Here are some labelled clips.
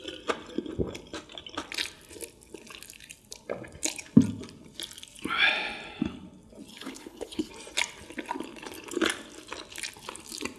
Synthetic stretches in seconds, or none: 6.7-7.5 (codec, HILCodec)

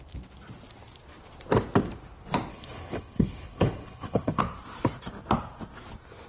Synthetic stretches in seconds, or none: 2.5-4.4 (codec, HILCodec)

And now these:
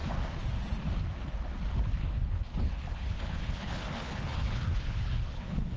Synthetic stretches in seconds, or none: 2.0-5.8 (codec, HILCodec)

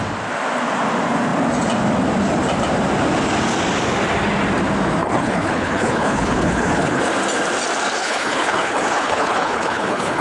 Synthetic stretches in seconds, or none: 5.0-7.0 (codec, HILCodec); 8.0-10.2

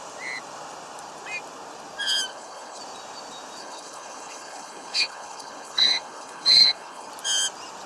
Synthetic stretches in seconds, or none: 2.3-2.8 (codec, HILCodec); 3.6-7.1